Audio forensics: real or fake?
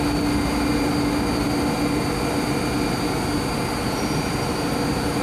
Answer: real